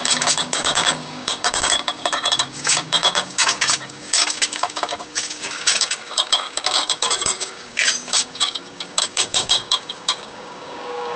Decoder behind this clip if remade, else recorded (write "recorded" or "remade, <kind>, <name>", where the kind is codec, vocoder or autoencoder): remade, codec, DAC